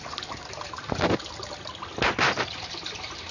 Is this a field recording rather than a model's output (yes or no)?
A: yes